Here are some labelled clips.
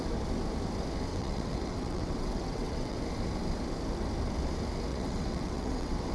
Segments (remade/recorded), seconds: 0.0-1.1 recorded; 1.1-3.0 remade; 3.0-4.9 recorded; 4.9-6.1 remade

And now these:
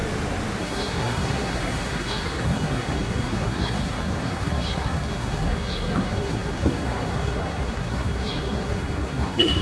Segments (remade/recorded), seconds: 0.0-0.6 recorded; 0.6-9.6 remade

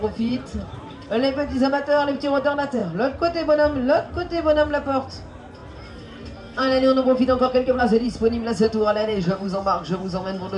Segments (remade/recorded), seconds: 0.0-2.8 remade; 2.8-4.1 recorded; 4.1-9.6 remade; 9.6-10.6 recorded

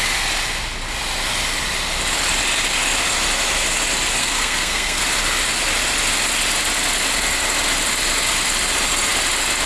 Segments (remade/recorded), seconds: 0.0-4.2 recorded; 4.2-5.0 remade; 5.0-9.7 recorded

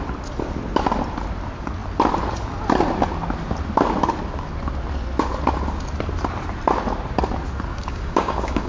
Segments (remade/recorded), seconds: 0.0-7.7 recorded; 7.7-8.7 remade

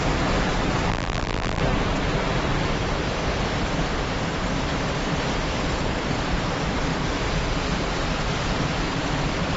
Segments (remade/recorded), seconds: 0.0-0.9 recorded; 0.9-1.6 remade; 1.6-9.6 recorded